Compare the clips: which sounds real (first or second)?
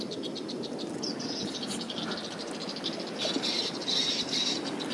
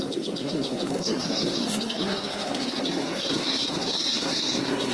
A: first